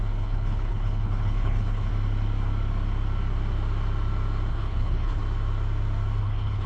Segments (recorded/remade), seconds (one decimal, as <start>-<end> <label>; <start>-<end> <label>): 0.0-1.9 remade; 1.9-4.5 recorded; 4.5-5.2 remade; 5.2-6.2 recorded; 6.2-6.7 remade